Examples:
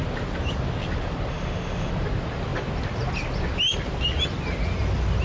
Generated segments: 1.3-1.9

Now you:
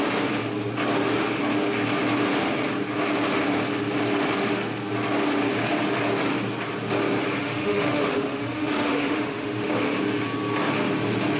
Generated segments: 7.4-9.7

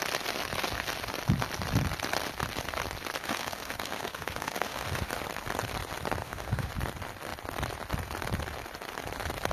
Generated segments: 3.2-5.1; 6.2-6.7

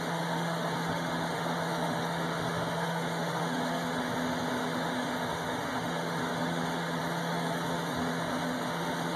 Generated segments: 0.0-9.2

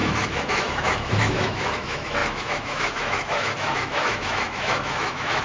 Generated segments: 0.0-5.4

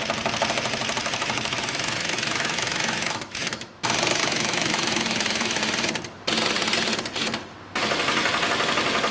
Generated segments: 1.0-3.7; 4.2-5.6

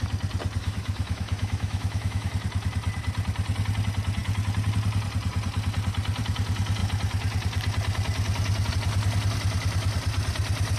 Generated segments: 0.6-2.3

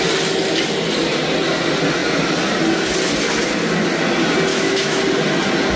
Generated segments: 4.5-5.0